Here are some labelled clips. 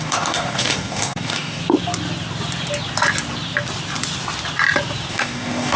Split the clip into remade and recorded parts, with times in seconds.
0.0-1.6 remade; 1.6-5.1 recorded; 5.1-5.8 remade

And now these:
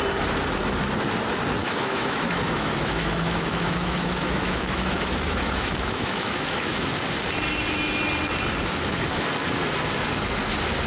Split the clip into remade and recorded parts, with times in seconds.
0.0-1.6 recorded; 1.6-6.9 remade; 6.9-10.9 recorded

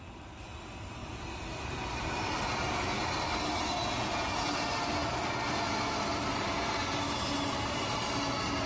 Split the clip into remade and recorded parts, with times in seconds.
0.0-3.8 recorded; 3.8-4.5 remade; 4.5-8.7 recorded

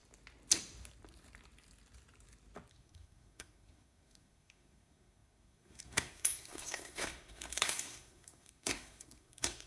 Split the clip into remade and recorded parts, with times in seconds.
0.0-2.7 recorded; 2.7-9.7 remade

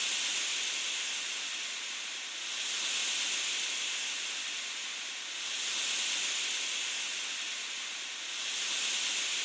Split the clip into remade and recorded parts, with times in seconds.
0.0-9.4 recorded

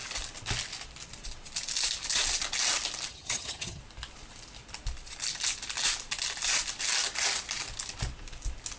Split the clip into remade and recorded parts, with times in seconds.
0.0-3.1 recorded; 3.1-3.8 remade; 3.8-8.8 recorded